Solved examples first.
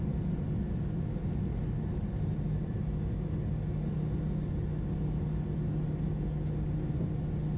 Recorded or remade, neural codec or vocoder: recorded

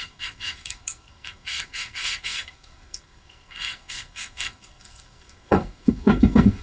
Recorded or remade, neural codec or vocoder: remade, codec, SNAC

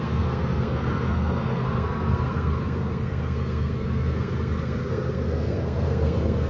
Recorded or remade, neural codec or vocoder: remade, codec, SNAC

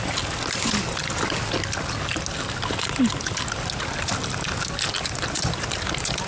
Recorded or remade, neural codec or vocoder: recorded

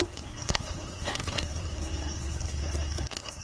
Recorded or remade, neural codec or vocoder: remade, codec, SNAC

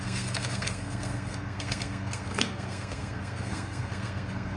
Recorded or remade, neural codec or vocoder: remade, codec, SNAC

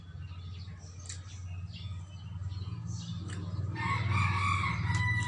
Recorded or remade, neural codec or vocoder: recorded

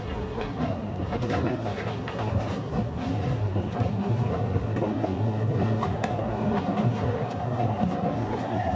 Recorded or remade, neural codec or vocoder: remade, codec, SNAC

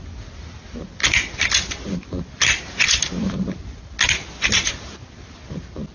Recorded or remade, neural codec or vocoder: recorded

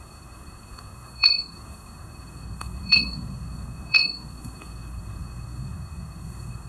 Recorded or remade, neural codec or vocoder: remade, codec, SNAC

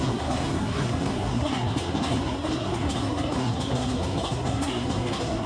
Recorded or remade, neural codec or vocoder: remade, codec, SNAC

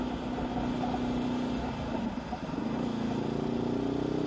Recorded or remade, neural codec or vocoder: recorded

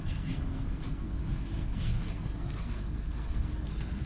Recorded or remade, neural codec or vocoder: remade, codec, SNAC